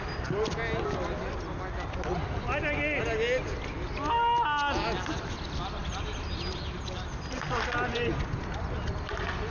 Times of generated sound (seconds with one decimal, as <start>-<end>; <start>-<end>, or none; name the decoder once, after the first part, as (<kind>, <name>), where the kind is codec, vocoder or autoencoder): none